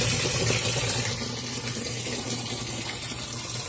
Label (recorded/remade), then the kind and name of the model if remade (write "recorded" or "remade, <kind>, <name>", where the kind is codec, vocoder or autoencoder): recorded